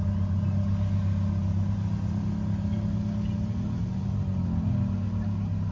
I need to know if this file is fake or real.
real